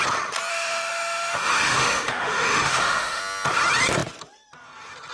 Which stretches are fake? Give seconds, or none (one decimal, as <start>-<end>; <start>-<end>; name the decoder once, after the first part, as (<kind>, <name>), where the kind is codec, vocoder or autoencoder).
0.5-3.2 (autoencoder, DAC-VAE)

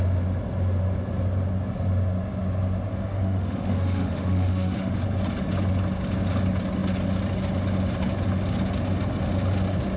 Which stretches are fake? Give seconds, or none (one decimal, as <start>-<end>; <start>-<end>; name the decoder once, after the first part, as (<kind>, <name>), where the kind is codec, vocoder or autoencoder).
2.9-5.0 (autoencoder, DAC-VAE)

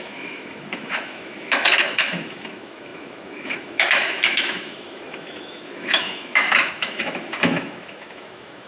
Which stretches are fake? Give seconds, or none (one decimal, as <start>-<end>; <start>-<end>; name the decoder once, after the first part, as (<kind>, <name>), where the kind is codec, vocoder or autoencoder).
0.0-8.7 (autoencoder, DAC-VAE)